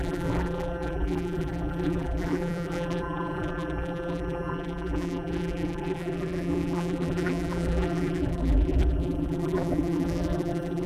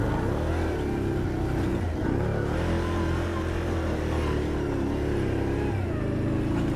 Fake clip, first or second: first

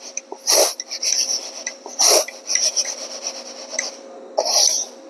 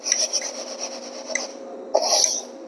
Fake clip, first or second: second